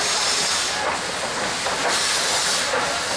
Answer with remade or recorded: recorded